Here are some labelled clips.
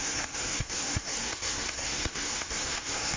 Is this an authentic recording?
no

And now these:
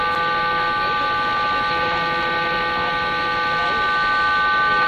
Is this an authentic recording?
yes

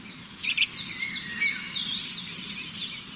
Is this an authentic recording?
yes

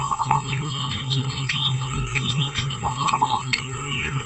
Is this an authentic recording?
no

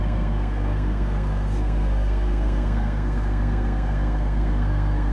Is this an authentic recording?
no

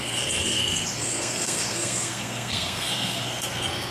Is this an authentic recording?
no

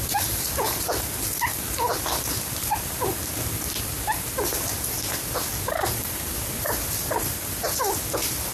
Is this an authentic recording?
yes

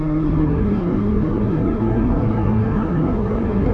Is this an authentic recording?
no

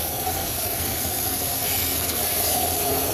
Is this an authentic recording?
no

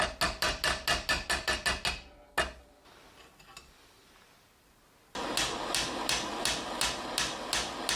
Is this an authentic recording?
yes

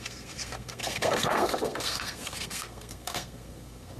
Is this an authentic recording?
no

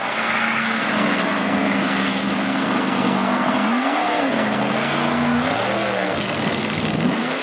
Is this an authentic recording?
no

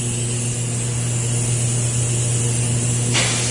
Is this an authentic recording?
yes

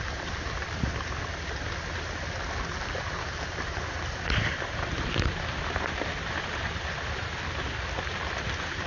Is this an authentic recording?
yes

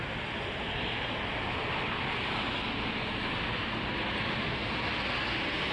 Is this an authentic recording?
yes